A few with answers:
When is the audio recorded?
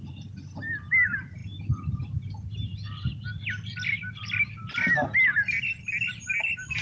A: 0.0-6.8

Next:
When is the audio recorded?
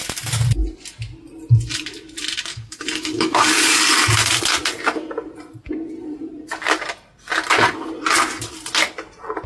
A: 0.0-2.5; 3.8-9.5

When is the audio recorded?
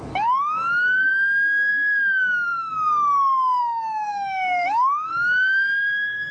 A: 1.1-1.7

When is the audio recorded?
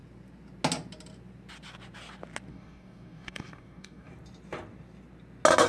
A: 0.0-2.5; 4.1-5.7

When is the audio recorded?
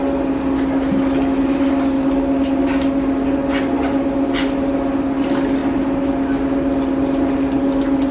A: 0.0-8.1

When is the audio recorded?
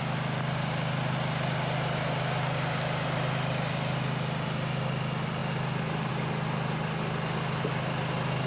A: 0.0-8.5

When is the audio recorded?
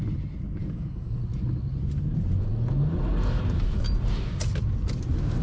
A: 0.0-0.6; 1.2-5.4